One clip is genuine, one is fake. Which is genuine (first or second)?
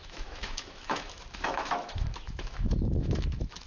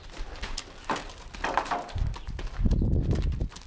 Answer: second